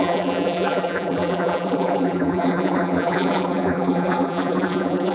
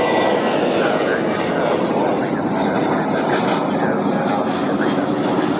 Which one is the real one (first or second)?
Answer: second